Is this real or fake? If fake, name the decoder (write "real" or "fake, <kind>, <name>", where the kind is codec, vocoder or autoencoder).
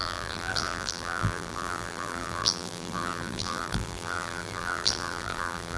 fake, vocoder, BigVGAN v2